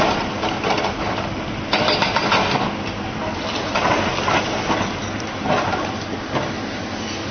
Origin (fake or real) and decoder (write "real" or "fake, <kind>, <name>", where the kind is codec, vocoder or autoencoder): real